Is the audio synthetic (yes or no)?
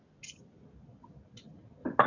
no